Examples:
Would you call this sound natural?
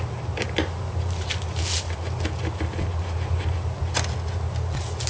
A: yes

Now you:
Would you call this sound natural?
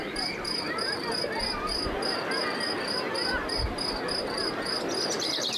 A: yes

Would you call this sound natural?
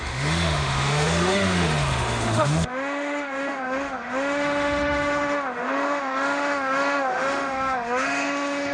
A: no